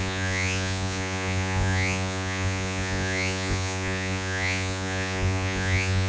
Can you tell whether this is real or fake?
fake